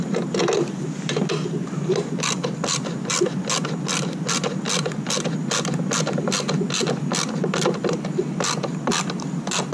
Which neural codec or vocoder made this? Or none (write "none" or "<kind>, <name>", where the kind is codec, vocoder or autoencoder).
none